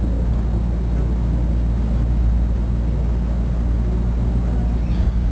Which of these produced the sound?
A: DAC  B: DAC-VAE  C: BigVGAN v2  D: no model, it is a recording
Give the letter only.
D